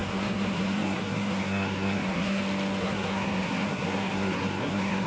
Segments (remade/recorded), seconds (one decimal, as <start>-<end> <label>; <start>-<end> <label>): 0.0-2.4 remade; 2.4-2.8 recorded; 2.8-5.1 remade